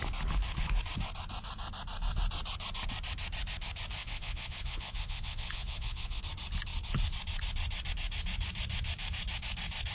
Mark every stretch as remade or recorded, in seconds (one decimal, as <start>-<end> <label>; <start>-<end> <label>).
0.0-4.0 recorded; 4.0-6.2 remade; 6.2-9.9 recorded